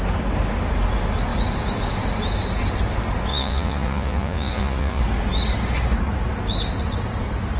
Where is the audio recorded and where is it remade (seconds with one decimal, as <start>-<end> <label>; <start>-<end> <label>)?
0.0-3.3 recorded; 3.3-5.0 remade; 5.0-7.6 recorded